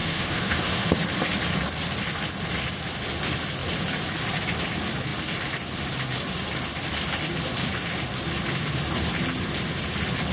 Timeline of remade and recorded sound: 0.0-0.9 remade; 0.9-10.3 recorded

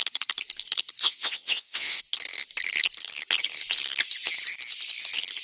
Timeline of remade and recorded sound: 0.0-1.0 recorded; 1.0-2.0 remade; 2.0-5.4 recorded

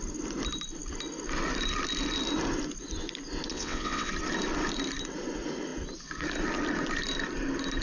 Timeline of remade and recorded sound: 0.0-3.5 recorded; 3.5-4.1 remade; 4.1-7.8 recorded